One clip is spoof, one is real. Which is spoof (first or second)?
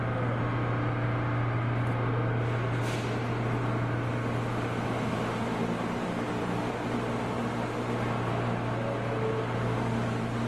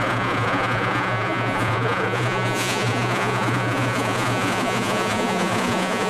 second